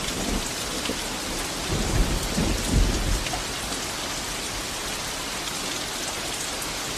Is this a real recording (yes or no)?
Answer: yes